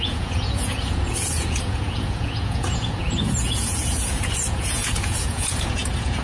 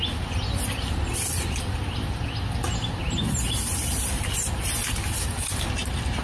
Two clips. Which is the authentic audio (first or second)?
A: second